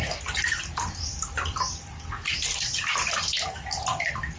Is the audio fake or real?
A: real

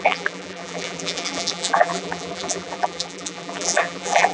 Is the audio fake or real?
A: fake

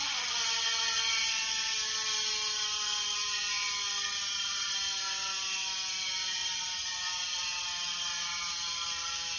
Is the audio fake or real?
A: real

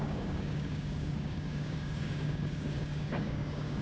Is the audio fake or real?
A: fake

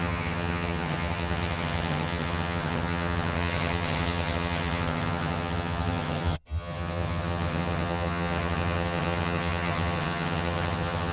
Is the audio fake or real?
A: fake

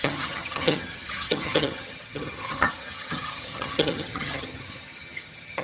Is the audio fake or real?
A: fake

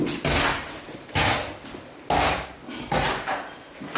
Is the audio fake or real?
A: real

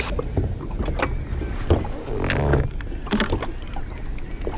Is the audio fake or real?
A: real